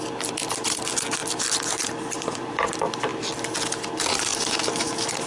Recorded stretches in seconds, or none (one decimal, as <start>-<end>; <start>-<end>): 3.1-3.7